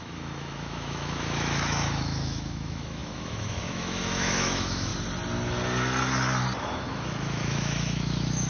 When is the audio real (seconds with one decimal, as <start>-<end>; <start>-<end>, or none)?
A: 4.9-6.6